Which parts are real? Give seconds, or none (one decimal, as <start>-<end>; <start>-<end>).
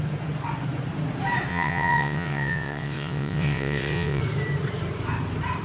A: 0.0-1.5; 4.2-5.6